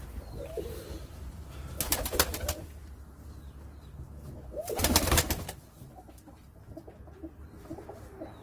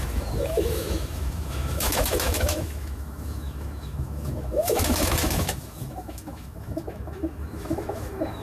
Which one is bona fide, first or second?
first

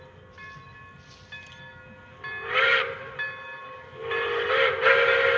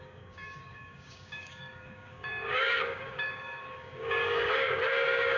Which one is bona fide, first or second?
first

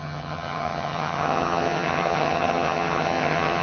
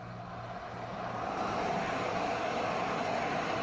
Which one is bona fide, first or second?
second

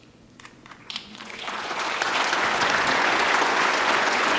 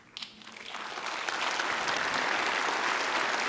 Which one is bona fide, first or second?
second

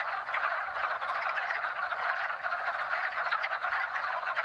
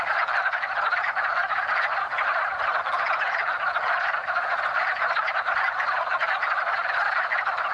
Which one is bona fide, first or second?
second